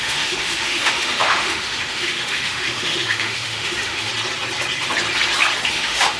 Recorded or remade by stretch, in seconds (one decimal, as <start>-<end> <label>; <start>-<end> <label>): 0.0-4.1 remade; 4.1-5.7 recorded; 5.7-6.2 remade